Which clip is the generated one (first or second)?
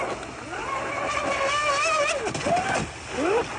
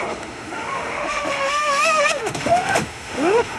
second